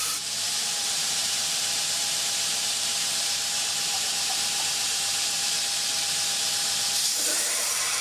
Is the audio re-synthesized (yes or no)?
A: yes